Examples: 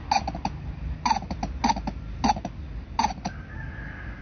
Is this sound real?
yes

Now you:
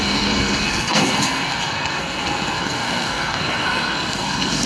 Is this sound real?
no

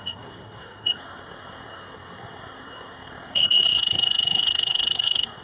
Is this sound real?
no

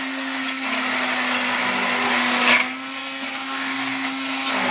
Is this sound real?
yes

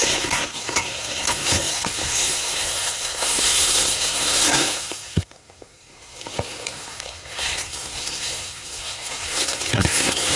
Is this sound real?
no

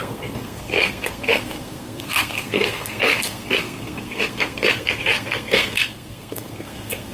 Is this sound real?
no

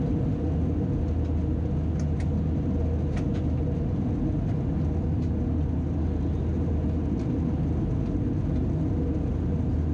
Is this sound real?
yes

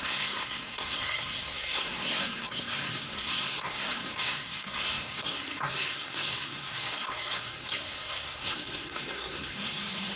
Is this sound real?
no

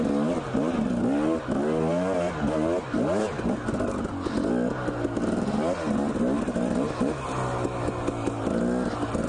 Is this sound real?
yes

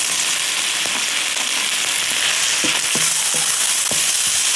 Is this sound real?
yes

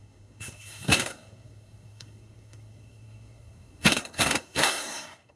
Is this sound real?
no